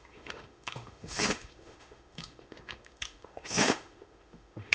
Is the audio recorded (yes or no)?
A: no